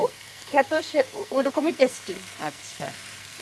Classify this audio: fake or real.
fake